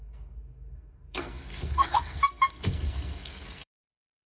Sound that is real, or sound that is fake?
fake